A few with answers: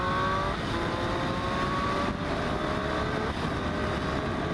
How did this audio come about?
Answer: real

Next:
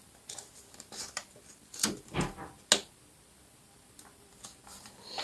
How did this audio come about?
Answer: real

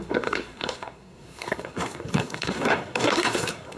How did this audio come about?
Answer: fake